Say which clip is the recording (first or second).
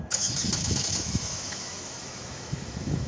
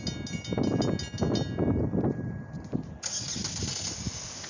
second